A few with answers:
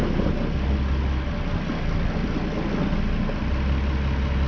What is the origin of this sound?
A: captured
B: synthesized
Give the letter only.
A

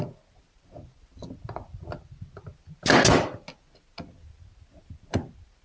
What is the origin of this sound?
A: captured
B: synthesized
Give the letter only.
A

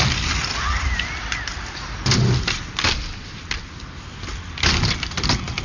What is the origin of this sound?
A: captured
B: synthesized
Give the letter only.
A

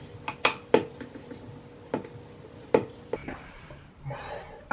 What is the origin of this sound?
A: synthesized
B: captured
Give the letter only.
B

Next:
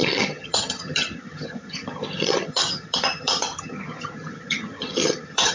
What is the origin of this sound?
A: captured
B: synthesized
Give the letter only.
B